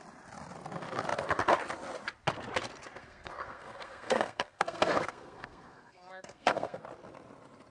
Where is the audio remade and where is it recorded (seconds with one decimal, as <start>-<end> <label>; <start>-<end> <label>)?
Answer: 0.0-3.0 recorded; 3.0-6.8 remade; 6.8-7.7 recorded

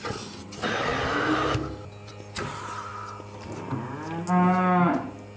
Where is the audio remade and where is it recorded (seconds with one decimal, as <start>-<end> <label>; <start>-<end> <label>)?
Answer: 0.0-5.4 recorded